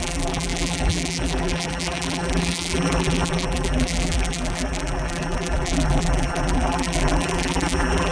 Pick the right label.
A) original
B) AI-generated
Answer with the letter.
B